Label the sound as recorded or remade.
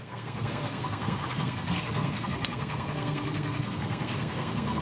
remade